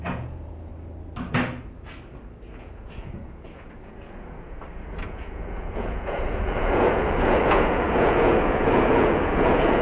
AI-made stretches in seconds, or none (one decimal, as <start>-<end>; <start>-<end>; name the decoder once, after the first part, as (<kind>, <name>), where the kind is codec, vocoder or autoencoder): 0.0-0.7 (vocoder, Vocos); 2.6-9.8